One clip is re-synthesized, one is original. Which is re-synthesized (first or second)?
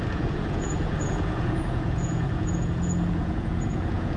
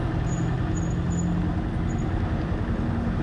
first